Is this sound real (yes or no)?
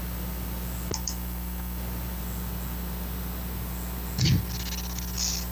yes